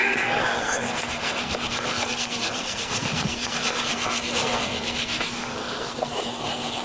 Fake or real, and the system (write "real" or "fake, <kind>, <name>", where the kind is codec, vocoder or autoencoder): fake, codec, SNAC